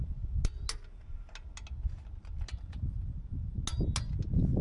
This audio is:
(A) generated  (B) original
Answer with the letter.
B